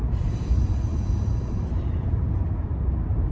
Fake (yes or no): yes